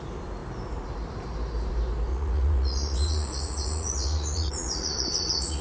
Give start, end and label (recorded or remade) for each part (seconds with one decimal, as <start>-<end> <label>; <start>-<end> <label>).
0.0-2.1 recorded; 2.1-5.6 remade